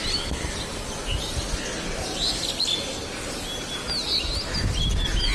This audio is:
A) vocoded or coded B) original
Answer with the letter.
B